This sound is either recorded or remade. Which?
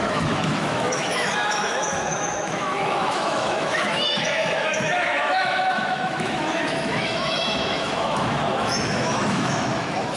remade